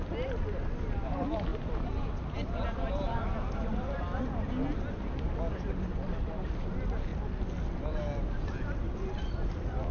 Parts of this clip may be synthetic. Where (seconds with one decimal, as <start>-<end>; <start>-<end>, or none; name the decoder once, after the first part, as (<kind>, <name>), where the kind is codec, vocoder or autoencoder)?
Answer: none